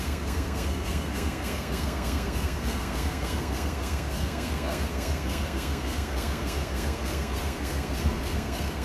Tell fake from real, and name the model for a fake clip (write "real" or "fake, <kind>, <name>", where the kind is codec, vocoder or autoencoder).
fake, codec, SNAC